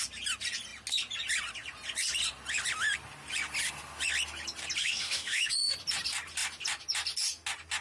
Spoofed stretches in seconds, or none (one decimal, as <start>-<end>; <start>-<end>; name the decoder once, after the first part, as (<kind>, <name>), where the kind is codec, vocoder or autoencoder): 4.8-5.7 (autoencoder, DAC-VAE)